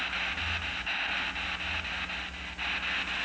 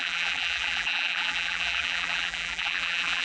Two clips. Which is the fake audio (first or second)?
second